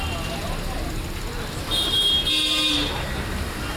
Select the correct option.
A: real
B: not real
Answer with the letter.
A